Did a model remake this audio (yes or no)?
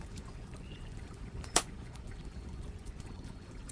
yes